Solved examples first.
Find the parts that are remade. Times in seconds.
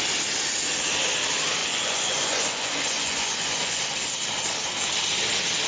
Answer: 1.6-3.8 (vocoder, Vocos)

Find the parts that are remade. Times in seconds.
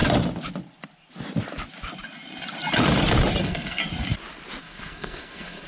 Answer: 3.4-3.8 (codec, SNAC); 4.6-5.7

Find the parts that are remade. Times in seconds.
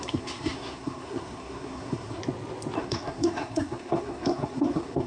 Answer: 0.0-2.2 (codec, SNAC); 2.8-5.1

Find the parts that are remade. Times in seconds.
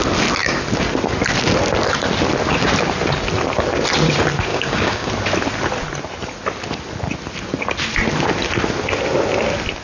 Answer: 4.5-5.1 (codec, DAC)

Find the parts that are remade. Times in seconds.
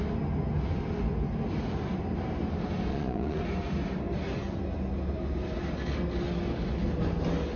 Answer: 2.9-3.4 (vocoder, Vocos)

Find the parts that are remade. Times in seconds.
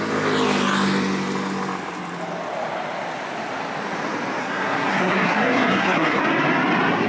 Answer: 4.4-6.2 (codec, SNAC)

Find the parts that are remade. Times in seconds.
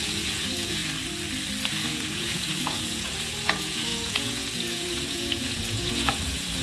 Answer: 0.0-0.8 (vocoder, Vocos); 1.7-6.6